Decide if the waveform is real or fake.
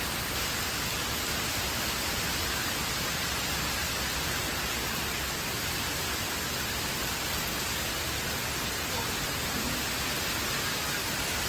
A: real